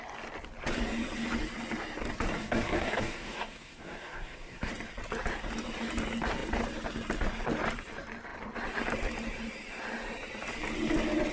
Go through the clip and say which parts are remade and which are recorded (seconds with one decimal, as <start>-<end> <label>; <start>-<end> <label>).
0.0-2.4 recorded; 2.4-4.7 remade; 4.7-11.3 recorded